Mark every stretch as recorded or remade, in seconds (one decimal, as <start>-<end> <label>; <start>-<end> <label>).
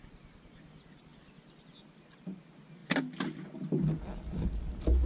0.0-5.1 recorded